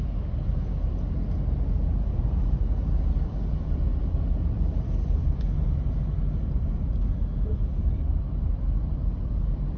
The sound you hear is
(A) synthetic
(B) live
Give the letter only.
A